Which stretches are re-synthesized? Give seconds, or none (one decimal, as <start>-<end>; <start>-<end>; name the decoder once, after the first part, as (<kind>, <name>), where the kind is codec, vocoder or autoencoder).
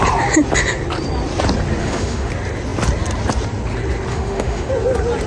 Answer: 1.8-2.3 (autoencoder, DAC-VAE); 4.1-4.7